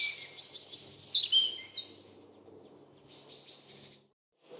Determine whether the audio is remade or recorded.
recorded